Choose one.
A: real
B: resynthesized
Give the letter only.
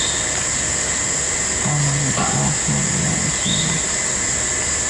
A